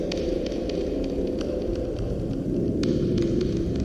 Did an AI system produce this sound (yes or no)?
yes